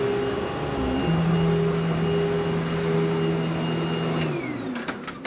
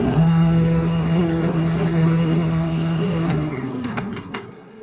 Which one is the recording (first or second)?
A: first